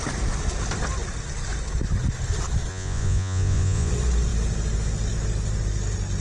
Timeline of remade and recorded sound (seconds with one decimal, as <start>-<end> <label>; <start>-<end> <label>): 0.0-2.7 recorded; 2.7-3.9 remade; 3.9-6.2 recorded